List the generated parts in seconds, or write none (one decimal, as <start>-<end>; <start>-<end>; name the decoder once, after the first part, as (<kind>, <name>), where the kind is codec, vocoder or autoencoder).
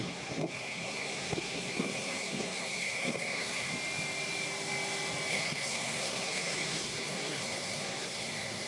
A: 0.0-3.7 (codec, SNAC); 5.3-8.7